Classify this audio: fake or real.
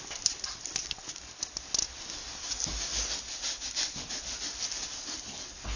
real